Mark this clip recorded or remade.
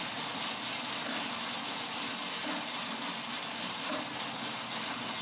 recorded